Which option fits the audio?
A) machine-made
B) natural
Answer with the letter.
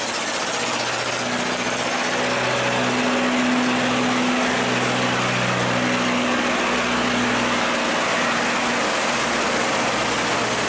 B